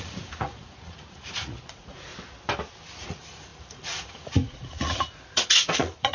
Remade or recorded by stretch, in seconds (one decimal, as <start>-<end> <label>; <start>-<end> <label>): 0.0-2.1 remade; 2.1-3.0 recorded; 3.0-6.1 remade